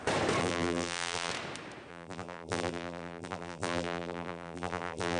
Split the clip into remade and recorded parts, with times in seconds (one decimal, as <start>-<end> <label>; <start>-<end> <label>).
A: 0.0-0.4 recorded; 0.4-1.3 remade; 1.3-1.9 recorded; 1.9-5.2 remade